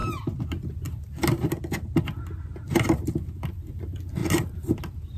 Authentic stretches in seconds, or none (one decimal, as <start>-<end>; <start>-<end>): 0.6-5.2